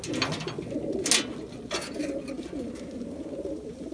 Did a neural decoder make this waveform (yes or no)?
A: no